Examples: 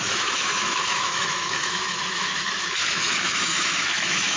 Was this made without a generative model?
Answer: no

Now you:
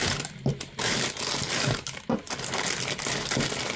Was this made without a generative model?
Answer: yes